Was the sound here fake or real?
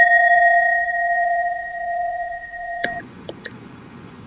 fake